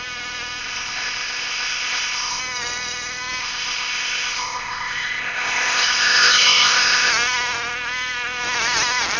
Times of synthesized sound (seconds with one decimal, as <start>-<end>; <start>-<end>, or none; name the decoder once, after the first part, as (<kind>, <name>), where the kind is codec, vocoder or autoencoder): 0.6-2.4 (codec, ZipCodec); 3.4-7.1